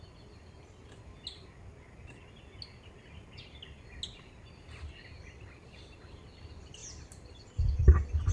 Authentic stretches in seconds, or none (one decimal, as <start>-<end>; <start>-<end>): 0.0-8.3

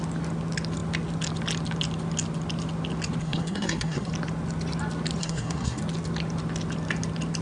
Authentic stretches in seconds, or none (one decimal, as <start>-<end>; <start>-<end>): 0.0-3.2; 4.1-5.2; 5.8-7.4

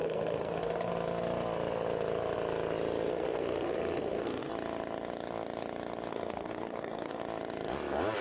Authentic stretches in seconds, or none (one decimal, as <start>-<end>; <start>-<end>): 0.9-3.1; 4.5-6.1; 7.2-8.2